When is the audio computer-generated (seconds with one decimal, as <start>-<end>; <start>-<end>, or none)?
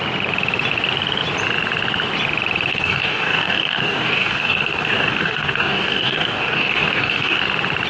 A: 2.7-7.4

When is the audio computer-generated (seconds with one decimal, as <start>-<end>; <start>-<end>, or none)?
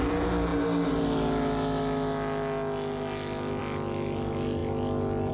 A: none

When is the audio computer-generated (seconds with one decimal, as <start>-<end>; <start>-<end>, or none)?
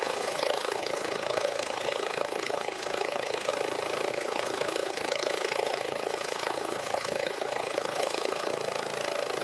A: 0.0-3.5; 4.1-8.5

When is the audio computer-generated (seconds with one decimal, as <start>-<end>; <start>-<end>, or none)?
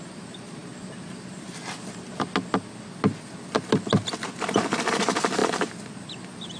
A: none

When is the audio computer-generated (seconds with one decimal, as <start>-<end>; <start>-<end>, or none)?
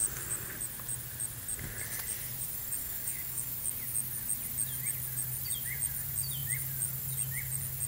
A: 2.8-3.8